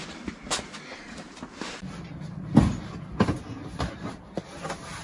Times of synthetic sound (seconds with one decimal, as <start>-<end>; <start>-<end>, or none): none

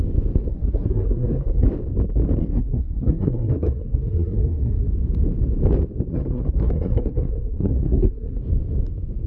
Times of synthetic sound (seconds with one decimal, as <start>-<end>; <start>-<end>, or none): 0.5-1.7; 2.4-4.9; 6.1-8.4

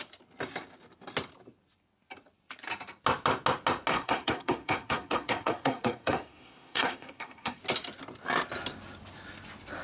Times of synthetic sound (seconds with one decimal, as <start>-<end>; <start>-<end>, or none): 3.9-7.6

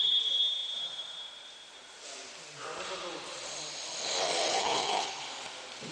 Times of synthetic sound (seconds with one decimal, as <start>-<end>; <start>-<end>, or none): 4.5-5.2